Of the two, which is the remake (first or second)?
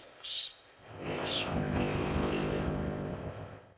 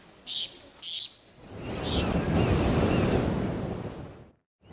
first